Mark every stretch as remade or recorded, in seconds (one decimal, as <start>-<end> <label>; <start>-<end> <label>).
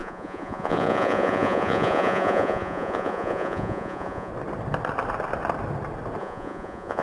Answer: 0.0-4.3 remade; 4.3-6.2 recorded; 6.2-7.0 remade